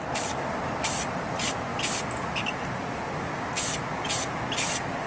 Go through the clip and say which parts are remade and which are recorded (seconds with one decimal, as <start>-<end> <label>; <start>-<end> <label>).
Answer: 0.0-5.1 recorded